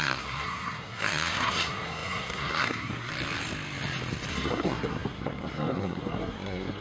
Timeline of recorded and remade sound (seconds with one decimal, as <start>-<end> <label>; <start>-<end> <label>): 0.0-3.1 remade; 3.1-4.3 recorded; 4.3-6.8 remade